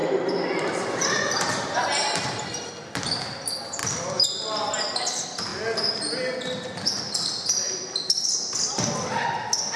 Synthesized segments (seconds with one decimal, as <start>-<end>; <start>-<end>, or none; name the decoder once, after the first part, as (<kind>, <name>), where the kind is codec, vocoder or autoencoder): 0.0-2.7 (vocoder, BigVGAN v2)